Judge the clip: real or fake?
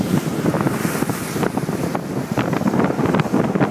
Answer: real